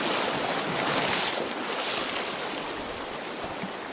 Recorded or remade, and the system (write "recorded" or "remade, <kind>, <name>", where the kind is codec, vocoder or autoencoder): recorded